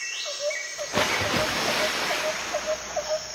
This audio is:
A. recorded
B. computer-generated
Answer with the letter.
A